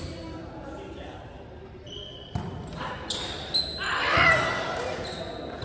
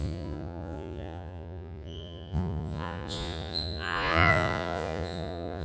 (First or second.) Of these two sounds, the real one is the first